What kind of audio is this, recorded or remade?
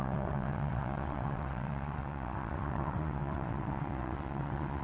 remade